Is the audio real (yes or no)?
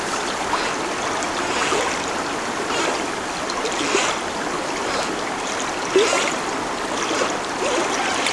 yes